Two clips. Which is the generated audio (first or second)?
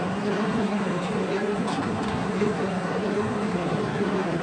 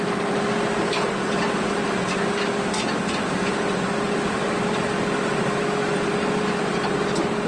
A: first